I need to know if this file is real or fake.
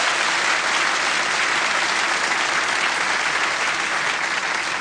real